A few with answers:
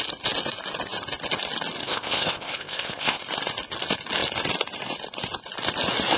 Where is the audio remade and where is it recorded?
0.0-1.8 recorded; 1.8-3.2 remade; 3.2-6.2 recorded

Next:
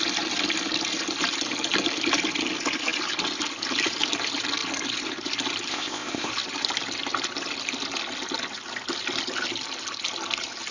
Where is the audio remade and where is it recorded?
0.0-5.7 recorded; 5.7-6.3 remade; 6.3-10.7 recorded

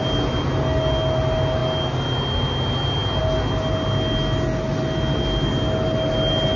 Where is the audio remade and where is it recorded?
0.0-6.6 recorded

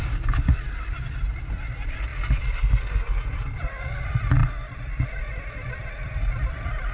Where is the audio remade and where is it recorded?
0.0-6.9 recorded

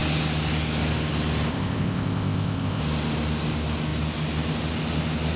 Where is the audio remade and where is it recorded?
0.0-1.5 recorded; 1.5-2.8 remade; 2.8-5.4 recorded

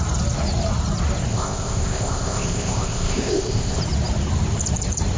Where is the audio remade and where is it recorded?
0.0-1.3 recorded; 1.3-3.8 remade; 3.8-5.2 recorded

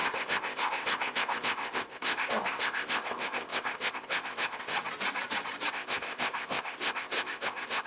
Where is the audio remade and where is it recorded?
0.0-4.7 remade; 4.7-5.7 recorded; 5.7-7.9 remade